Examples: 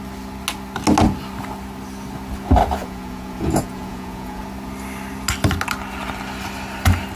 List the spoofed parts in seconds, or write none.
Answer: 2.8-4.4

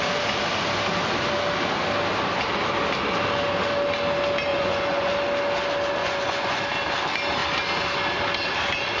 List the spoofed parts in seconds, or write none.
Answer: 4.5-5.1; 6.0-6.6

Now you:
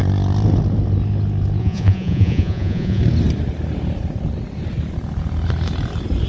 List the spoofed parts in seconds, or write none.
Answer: 1.6-3.0

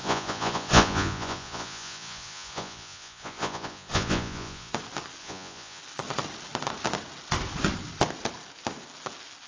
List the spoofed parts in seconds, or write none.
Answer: 0.0-4.7; 5.2-5.8

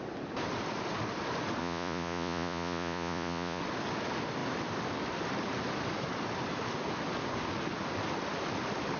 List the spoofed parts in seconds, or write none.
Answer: 1.6-3.6

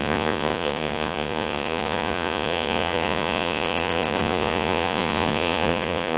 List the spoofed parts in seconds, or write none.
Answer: 0.0-6.2

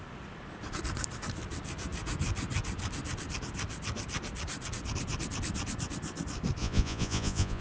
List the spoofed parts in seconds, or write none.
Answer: 6.6-7.6

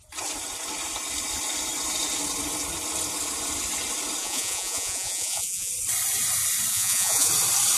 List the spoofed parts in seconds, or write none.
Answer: 4.2-5.7; 6.7-7.3